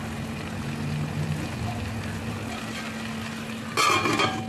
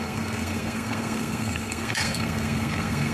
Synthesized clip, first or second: second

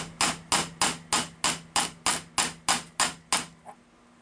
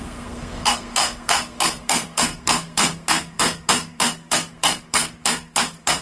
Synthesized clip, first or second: second